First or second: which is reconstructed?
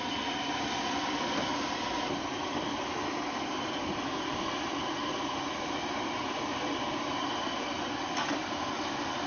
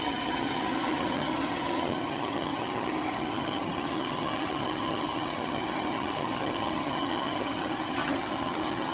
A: second